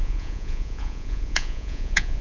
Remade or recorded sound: remade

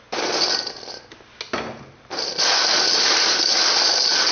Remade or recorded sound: recorded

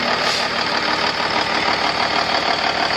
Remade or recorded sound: recorded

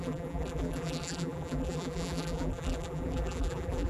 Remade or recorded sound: remade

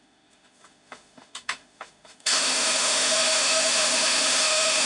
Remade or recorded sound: remade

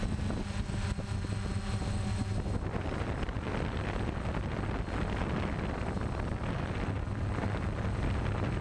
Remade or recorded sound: recorded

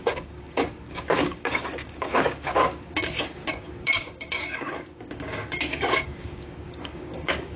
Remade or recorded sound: remade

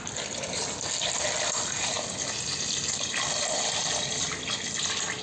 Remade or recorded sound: recorded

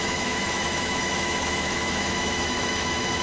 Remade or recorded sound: remade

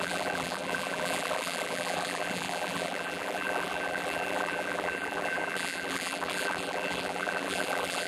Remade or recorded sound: remade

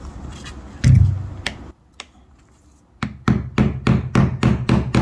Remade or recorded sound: recorded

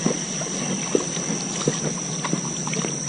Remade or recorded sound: recorded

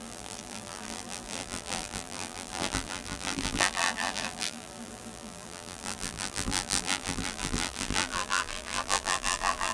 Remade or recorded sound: remade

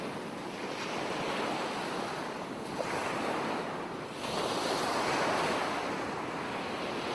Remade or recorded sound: recorded